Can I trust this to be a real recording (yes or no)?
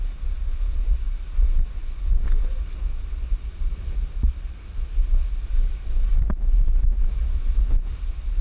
yes